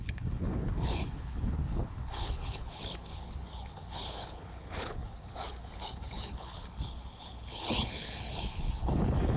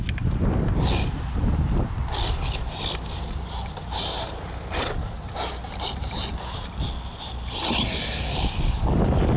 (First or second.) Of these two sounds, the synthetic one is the first